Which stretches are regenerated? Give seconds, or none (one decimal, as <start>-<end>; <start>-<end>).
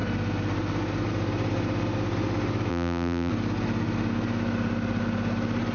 2.7-3.3